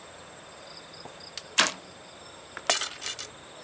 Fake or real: real